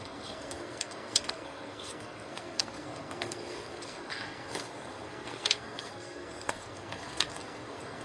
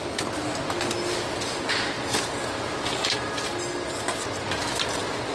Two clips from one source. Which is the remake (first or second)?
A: first